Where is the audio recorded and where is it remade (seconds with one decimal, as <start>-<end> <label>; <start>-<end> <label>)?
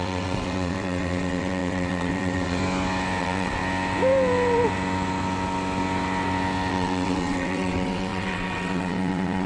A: 0.0-2.6 remade; 2.6-3.2 recorded; 3.2-3.6 remade; 3.6-6.7 recorded; 6.7-9.5 remade